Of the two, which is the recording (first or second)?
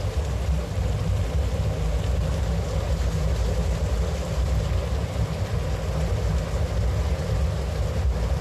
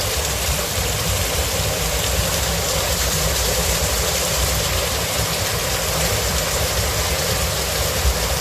first